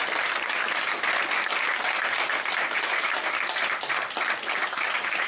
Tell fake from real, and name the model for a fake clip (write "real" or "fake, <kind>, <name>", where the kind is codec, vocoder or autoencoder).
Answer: real